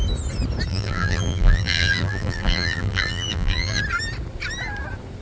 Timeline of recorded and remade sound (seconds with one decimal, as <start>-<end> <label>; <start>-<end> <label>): 0.0-0.7 recorded; 0.7-3.8 remade; 3.8-5.2 recorded